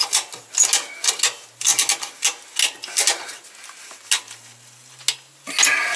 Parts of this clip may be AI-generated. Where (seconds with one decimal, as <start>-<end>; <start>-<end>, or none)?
none